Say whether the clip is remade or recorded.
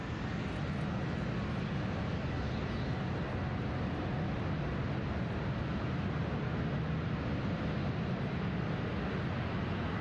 recorded